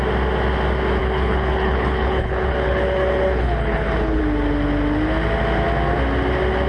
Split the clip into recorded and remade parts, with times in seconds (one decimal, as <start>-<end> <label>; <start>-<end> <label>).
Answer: 0.0-1.0 recorded; 1.0-4.2 remade; 4.2-6.7 recorded